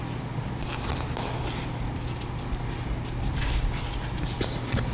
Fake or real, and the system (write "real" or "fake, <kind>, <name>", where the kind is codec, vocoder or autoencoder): real